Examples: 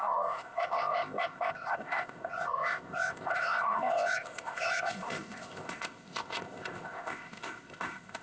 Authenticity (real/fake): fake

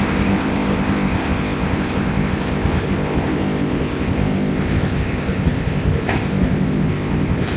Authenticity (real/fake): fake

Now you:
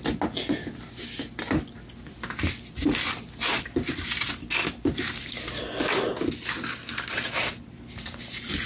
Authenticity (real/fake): real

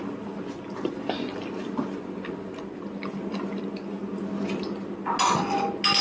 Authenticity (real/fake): real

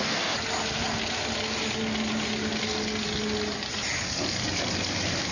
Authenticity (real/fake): real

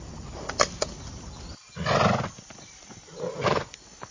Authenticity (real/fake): real